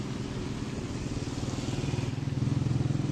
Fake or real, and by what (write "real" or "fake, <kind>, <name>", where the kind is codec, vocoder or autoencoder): real